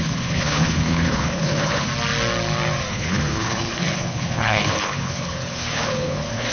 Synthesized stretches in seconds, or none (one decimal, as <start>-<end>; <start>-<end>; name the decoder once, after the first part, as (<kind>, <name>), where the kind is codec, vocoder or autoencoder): 0.0-1.9 (codec, HILCodec); 2.9-6.5